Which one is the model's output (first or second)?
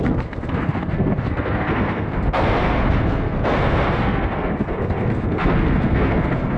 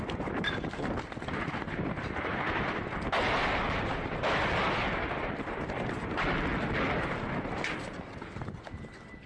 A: first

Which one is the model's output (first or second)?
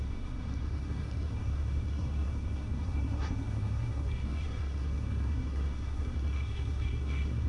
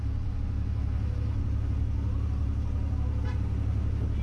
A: first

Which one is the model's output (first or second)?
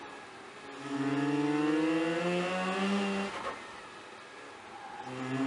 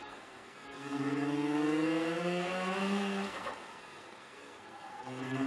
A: second